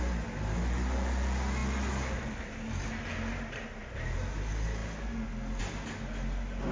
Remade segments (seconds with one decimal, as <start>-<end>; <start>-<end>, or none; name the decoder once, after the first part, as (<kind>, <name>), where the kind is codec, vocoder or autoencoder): none